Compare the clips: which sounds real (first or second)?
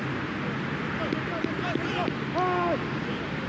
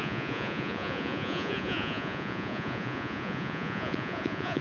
first